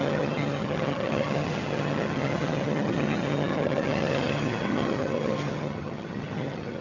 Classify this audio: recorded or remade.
remade